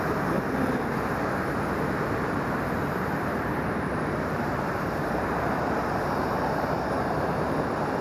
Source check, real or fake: fake